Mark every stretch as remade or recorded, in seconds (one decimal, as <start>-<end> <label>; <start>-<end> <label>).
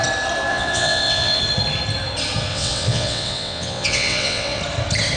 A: 0.0-0.5 recorded; 0.5-1.4 remade; 1.4-2.5 recorded; 2.5-4.6 remade; 4.6-5.2 recorded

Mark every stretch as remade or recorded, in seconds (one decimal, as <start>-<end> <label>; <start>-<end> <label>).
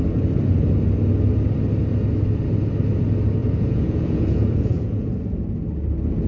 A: 0.0-3.4 recorded; 3.4-5.1 remade; 5.1-6.3 recorded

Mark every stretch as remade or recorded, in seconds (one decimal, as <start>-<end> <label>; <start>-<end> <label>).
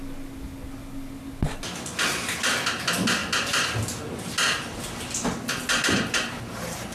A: 0.0-6.9 recorded